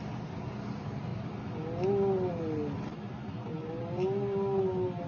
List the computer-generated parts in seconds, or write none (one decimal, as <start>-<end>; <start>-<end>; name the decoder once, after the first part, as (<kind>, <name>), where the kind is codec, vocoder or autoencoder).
none